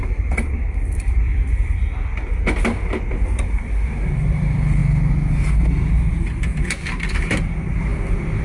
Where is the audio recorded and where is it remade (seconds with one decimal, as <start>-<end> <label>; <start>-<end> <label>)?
0.0-7.9 recorded; 7.9-8.4 remade